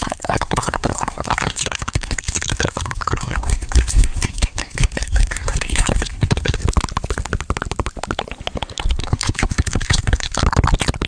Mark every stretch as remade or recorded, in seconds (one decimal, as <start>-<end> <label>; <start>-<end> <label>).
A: 0.0-6.6 remade; 6.6-9.0 recorded; 9.0-10.4 remade; 10.4-11.1 recorded